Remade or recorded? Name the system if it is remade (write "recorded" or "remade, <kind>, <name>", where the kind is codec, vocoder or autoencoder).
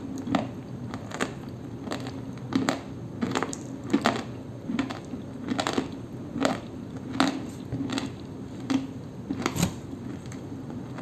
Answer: recorded